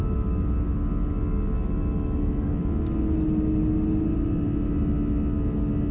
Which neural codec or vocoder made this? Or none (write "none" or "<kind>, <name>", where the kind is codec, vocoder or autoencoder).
none